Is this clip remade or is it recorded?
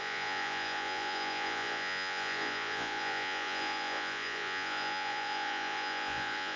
remade